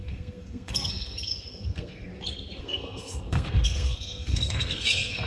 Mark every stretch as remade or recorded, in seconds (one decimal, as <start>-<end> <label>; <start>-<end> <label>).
0.0-2.1 remade; 2.1-2.6 recorded; 2.6-5.3 remade